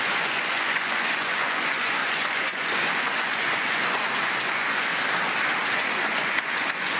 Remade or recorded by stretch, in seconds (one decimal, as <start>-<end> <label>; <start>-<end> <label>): 0.0-4.9 remade; 4.9-5.7 recorded; 5.7-7.0 remade